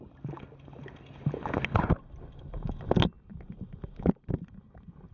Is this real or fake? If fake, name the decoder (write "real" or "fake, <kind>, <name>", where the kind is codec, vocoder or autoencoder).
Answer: real